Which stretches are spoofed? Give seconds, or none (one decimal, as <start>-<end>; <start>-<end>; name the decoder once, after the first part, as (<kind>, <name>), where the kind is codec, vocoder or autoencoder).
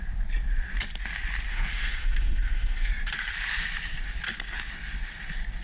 1.5-2.9 (autoencoder, DAC-VAE)